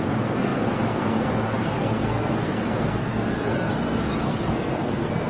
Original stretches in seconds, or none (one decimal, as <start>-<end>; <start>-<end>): none

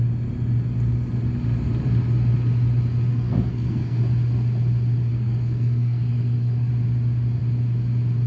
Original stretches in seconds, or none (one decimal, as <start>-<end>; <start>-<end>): 0.0-3.1; 4.0-5.1; 6.7-8.3